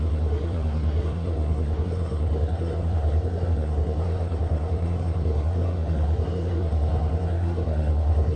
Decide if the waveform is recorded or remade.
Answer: remade